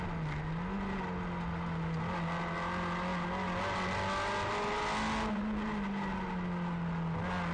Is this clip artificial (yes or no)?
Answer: no